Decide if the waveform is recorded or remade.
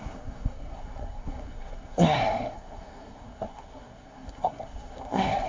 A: remade